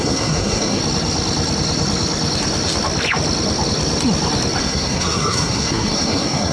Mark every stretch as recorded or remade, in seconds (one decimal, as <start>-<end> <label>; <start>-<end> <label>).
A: 0.0-0.8 remade; 0.8-4.6 recorded; 4.6-6.5 remade